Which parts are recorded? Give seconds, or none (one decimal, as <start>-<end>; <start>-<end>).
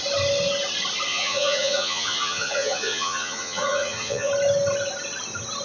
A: 0.0-1.1; 4.3-5.6